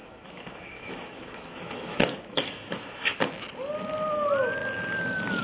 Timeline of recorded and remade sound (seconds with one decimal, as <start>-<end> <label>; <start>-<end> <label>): 0.0-3.2 remade; 3.2-5.4 recorded